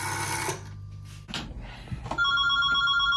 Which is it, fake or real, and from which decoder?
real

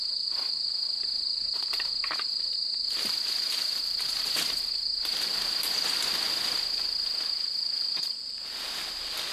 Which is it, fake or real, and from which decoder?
real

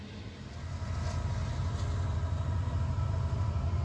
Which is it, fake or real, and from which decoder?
real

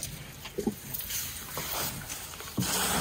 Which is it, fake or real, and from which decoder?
real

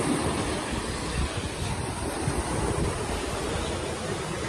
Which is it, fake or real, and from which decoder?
real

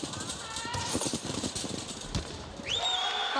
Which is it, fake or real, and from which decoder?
fake, vocoder, BigVGAN v2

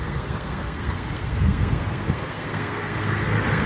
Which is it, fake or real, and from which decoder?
fake, codec, SNAC